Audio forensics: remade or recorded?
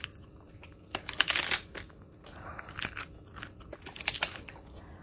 recorded